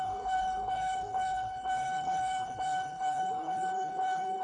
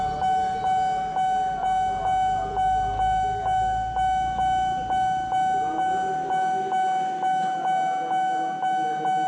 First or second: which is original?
second